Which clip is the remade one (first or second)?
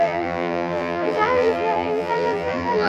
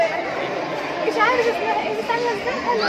first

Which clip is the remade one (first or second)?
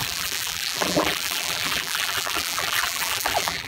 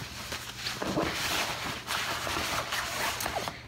first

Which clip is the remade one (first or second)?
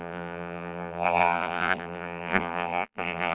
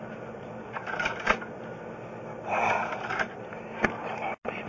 first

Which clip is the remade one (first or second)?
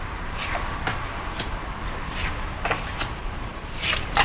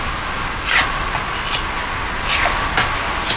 first